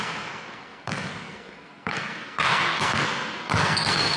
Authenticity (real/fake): fake